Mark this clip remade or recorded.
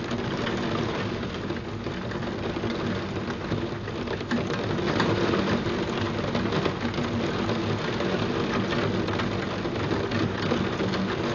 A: recorded